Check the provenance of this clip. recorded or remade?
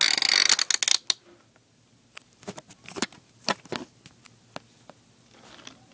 recorded